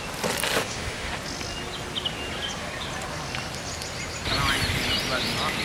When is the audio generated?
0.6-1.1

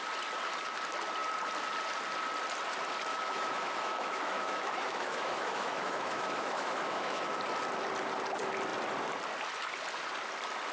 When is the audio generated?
3.1-7.4

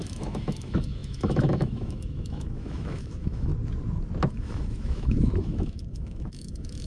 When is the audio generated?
0.0-3.5; 4.3-6.9

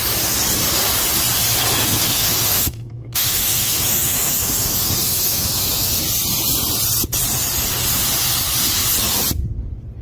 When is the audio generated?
1.8-6.0

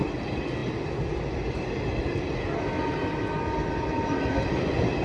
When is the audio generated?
none

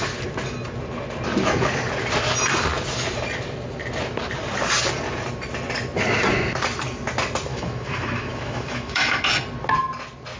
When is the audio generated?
7.5-9.3